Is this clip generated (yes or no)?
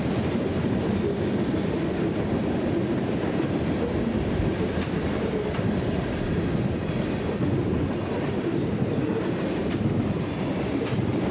no